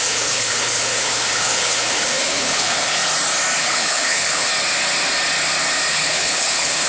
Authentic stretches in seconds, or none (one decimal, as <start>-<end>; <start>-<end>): 3.0-3.6; 4.5-5.9